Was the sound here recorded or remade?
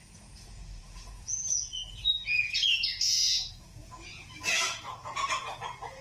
remade